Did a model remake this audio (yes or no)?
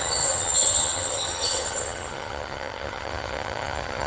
yes